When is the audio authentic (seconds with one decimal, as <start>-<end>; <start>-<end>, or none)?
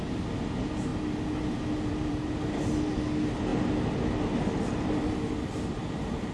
0.0-0.9; 2.3-6.3